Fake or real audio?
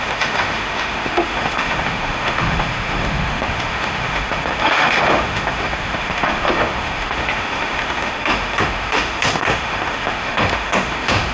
fake